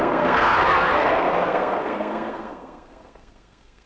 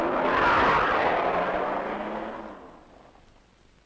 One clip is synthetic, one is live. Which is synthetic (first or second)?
first